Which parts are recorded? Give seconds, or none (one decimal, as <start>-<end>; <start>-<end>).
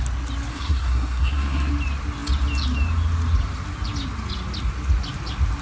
0.0-0.5; 1.7-5.6